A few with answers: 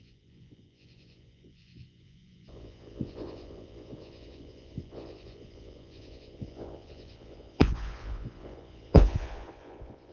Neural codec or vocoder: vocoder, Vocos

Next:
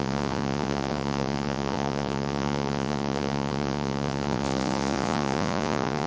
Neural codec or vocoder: vocoder, Vocos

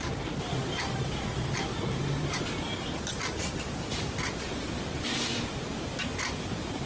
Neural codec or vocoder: none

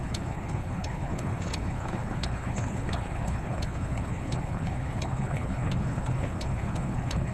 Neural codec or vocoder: codec, HILCodec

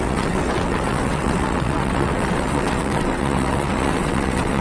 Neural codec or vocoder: vocoder, WaveNeXt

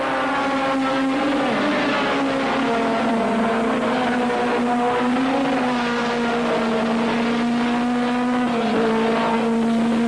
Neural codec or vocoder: none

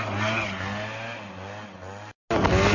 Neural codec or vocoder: none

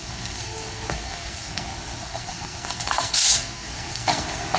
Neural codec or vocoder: codec, SNAC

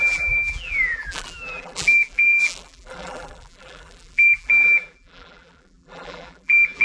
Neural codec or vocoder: vocoder, BigVGAN v2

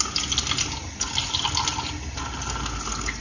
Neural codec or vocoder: none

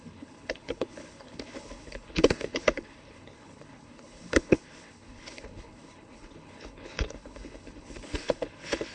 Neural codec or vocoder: codec, HILCodec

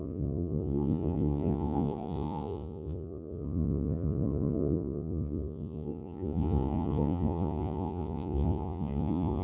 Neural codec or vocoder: vocoder, Vocos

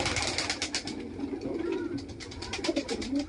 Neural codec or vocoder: none